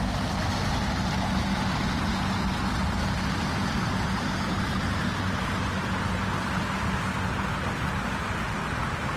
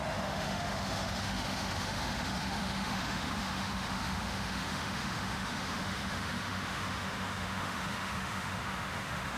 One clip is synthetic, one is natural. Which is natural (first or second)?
first